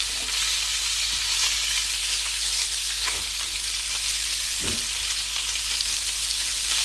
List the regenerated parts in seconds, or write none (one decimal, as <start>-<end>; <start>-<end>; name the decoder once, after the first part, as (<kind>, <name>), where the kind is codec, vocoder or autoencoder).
2.0-3.2 (codec, SNAC)